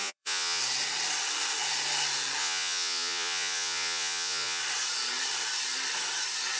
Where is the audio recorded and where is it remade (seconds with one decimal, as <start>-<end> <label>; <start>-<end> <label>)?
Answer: 0.0-0.6 remade; 0.6-2.4 recorded; 2.4-4.6 remade; 4.6-6.6 recorded